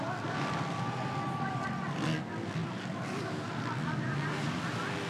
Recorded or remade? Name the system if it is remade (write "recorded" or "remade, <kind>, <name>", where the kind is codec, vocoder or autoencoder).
recorded